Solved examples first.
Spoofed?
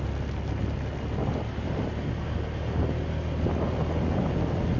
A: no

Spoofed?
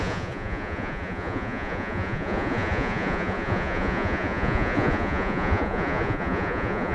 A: yes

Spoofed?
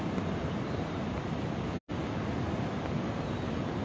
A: no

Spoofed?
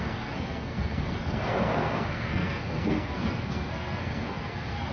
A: yes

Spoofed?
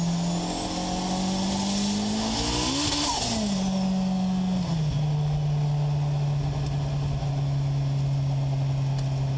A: no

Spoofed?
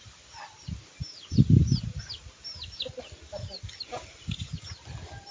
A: no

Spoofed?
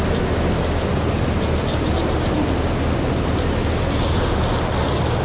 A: no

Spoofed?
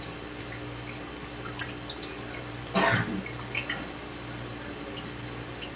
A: no